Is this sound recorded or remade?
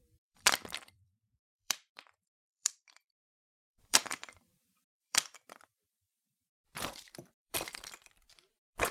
remade